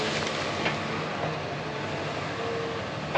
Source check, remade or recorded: recorded